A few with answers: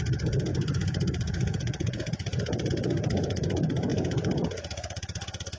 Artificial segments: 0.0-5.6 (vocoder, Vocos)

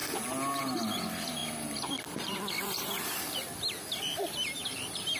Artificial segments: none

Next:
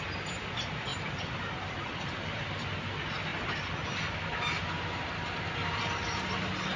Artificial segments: none

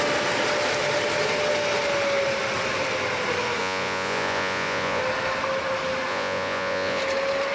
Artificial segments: 3.6-5.0 (vocoder, Vocos); 6.1-7.0

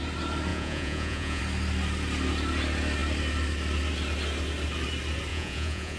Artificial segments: 0.5-1.4 (vocoder, Vocos); 5.3-6.0

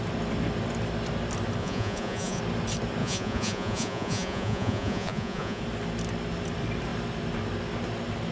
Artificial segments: 1.6-2.4 (vocoder, Vocos); 3.0-5.6